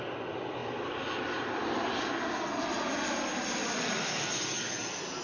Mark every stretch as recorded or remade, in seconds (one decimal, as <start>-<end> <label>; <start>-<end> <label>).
0.0-5.2 recorded